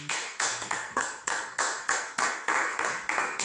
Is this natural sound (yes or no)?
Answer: no